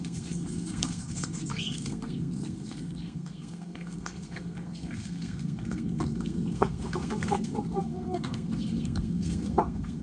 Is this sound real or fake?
fake